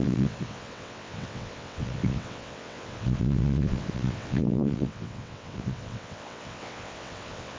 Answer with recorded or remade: remade